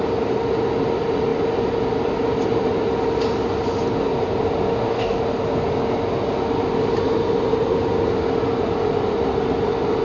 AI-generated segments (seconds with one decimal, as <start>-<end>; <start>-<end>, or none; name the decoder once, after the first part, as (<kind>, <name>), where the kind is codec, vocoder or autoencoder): 4.7-5.2 (codec, DAC)